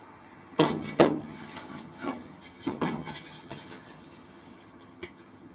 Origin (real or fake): fake